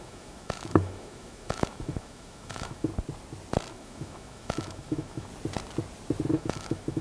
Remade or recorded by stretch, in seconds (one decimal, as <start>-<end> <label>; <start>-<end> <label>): 0.0-2.9 remade; 2.9-3.7 recorded; 3.7-5.3 remade; 5.3-6.3 recorded; 6.3-7.0 remade